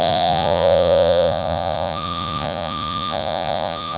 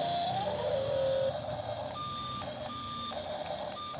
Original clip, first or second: second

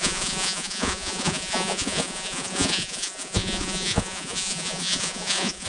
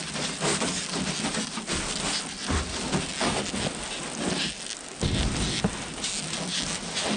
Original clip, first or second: second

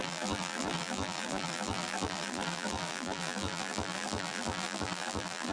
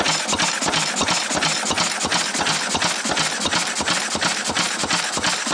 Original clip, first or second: second